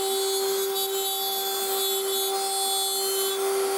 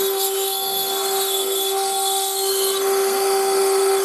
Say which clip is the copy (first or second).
second